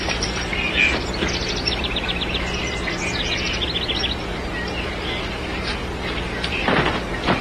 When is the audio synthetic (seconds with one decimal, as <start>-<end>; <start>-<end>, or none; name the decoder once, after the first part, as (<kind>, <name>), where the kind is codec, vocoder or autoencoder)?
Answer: 0.5-2.9 (vocoder, BigVGAN v2)